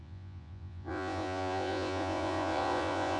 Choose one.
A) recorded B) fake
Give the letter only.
B